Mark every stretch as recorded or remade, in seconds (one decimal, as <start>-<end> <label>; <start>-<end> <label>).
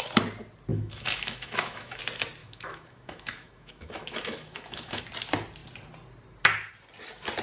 0.0-0.7 recorded; 0.7-2.0 remade; 2.0-2.4 recorded; 2.4-5.0 remade; 5.0-7.4 recorded